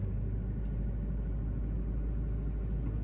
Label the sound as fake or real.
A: real